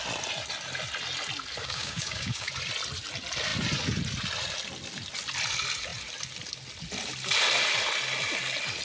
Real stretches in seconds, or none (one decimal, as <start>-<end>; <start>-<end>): 0.0-1.6; 2.5-8.8